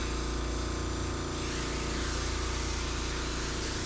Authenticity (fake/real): real